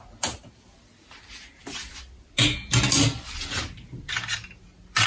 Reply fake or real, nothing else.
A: real